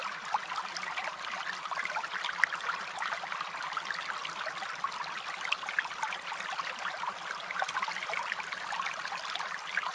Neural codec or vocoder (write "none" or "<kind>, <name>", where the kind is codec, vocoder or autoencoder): none